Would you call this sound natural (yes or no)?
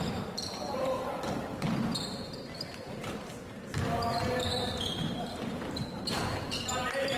no